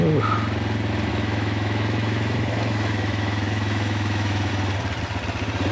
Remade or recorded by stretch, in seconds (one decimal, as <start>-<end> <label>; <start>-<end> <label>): 0.0-1.1 recorded; 1.1-4.5 remade; 4.5-5.7 recorded